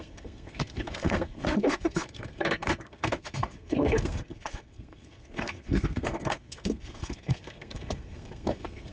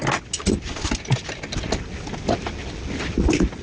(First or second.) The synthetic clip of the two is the first